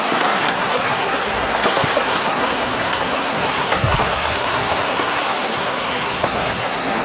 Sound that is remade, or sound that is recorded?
remade